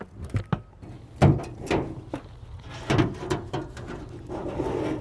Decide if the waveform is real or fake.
real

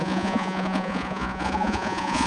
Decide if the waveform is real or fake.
fake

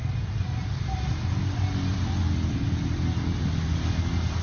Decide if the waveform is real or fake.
real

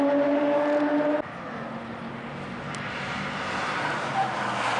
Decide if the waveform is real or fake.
real